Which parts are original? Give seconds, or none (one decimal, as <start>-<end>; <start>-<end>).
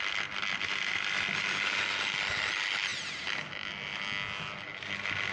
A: 0.0-5.3